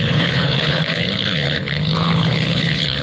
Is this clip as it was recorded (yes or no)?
no